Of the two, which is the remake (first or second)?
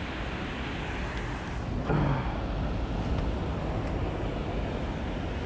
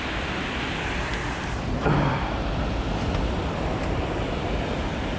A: second